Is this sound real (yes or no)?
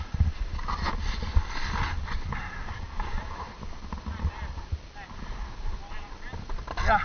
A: yes